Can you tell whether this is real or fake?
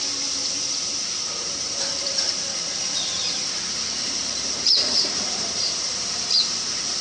fake